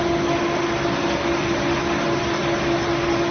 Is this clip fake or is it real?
real